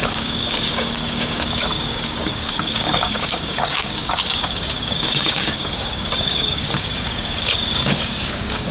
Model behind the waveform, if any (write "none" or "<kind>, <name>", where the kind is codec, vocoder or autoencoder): codec, DAC